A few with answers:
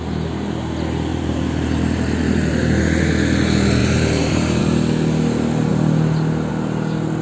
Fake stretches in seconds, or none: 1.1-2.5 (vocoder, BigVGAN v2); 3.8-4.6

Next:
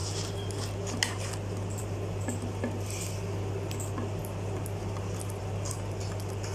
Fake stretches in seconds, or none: none

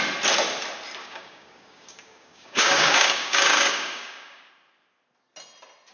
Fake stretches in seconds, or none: 1.0-4.5 (codec, DAC)

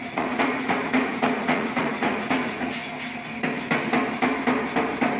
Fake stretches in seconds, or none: 0.0-2.8 (vocoder, Vocos)